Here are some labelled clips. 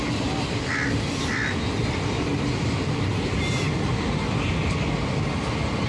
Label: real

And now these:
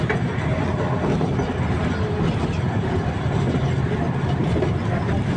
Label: real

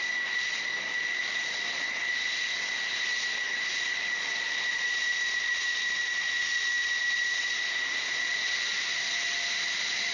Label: real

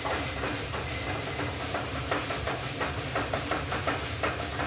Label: fake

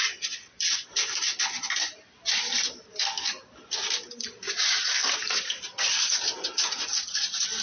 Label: real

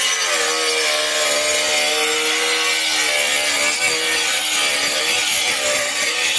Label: real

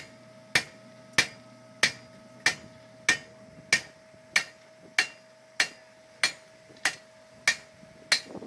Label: real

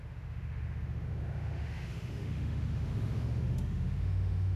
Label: fake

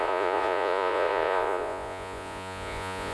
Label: fake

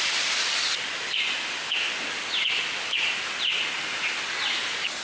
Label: real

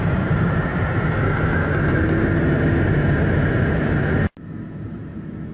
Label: real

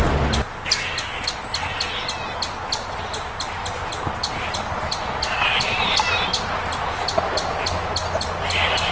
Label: real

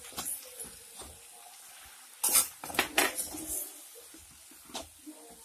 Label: real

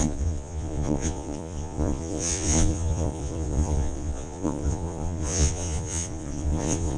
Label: fake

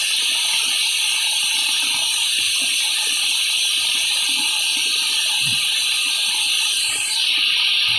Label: fake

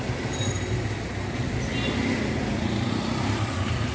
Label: real